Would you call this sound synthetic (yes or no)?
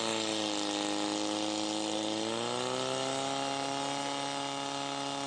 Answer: no